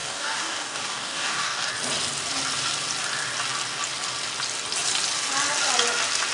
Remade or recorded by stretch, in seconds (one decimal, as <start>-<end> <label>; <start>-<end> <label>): 0.0-1.7 remade; 1.7-6.3 recorded